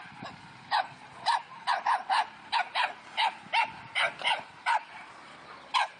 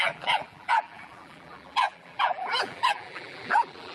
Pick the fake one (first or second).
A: second